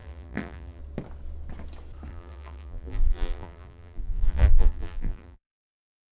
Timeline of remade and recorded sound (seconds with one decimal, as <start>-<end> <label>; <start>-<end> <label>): 0.0-0.8 remade; 0.8-2.1 recorded; 2.1-6.1 remade